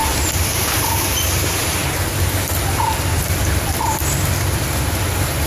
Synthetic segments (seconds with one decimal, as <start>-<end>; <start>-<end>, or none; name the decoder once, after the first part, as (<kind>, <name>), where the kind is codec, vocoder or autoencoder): 0.6-5.5 (vocoder, BigVGAN v2)